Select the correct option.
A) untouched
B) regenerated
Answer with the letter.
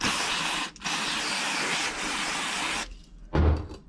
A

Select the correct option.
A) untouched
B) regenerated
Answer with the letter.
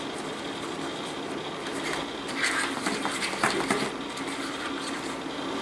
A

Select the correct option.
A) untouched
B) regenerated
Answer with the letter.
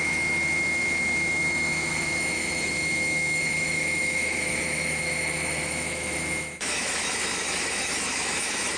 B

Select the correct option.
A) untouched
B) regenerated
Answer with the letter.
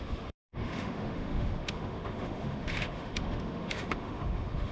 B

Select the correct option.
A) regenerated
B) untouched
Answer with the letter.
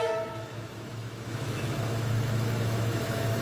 A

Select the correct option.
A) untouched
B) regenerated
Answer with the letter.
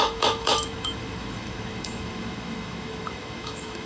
B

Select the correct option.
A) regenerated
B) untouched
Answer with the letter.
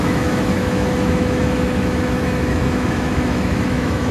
A